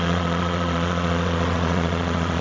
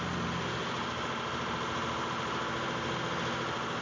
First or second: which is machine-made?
first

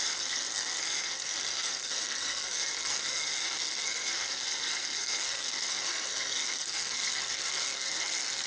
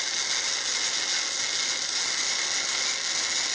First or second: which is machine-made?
first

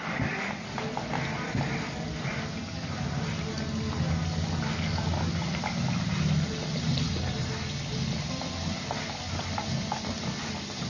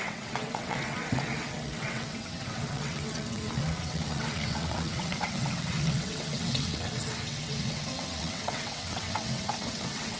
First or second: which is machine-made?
second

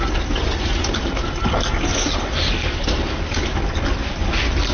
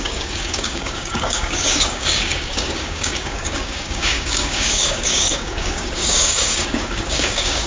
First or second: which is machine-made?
second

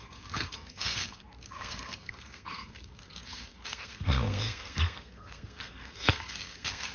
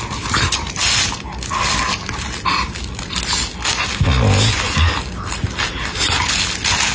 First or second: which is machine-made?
first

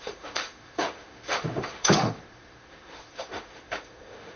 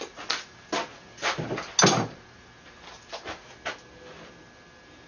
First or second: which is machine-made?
first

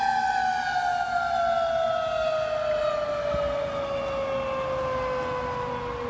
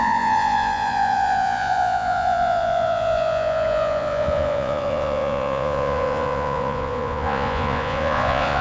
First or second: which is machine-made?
second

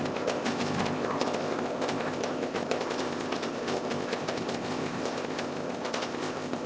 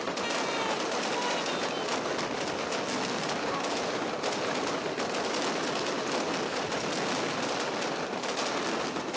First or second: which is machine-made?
first